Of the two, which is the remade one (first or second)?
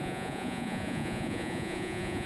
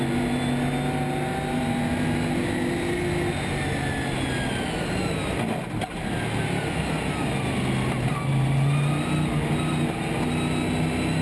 first